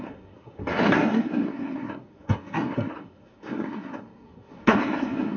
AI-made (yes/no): yes